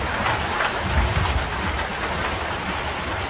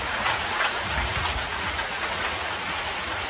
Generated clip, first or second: second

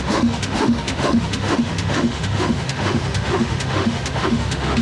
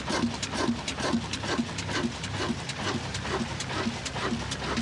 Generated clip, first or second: first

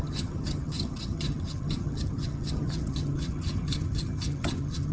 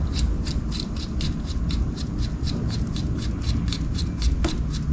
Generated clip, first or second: first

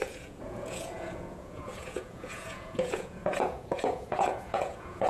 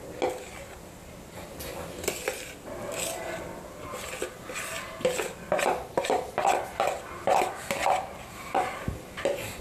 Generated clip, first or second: first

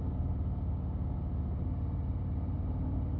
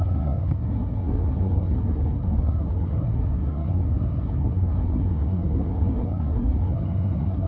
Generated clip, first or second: second